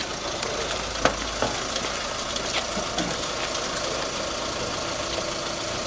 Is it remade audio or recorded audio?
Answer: recorded